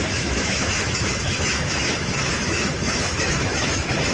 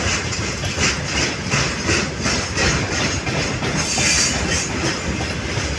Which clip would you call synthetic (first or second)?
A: first